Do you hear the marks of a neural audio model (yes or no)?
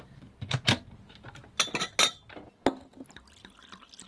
no